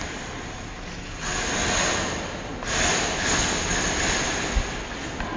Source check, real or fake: real